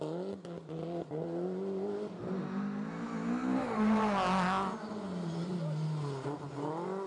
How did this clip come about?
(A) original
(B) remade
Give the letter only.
A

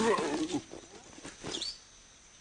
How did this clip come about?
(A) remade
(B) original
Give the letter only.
B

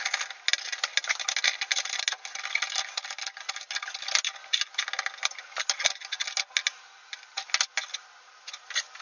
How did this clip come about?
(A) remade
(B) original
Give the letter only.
B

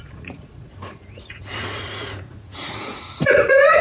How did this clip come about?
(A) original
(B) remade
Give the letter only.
B